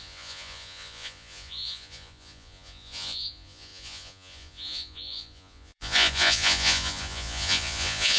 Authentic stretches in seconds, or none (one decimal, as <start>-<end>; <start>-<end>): none